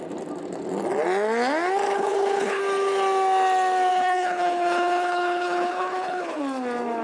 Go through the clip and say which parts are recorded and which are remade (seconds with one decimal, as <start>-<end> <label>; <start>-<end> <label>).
0.0-1.9 recorded; 1.9-2.6 remade; 2.6-3.9 recorded; 3.9-6.4 remade; 6.4-7.0 recorded